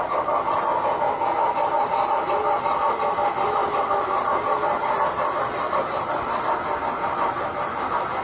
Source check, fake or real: real